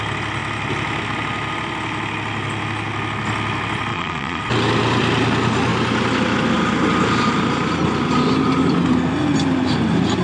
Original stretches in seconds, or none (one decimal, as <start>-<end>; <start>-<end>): 0.0-3.9; 4.4-10.2